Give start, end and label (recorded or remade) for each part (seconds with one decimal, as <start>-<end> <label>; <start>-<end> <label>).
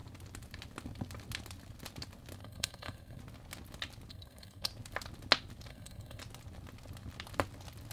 0.0-2.4 recorded; 2.4-3.2 remade; 3.2-4.1 recorded; 4.1-4.7 remade; 4.7-5.7 recorded; 5.7-6.2 remade; 6.2-7.9 recorded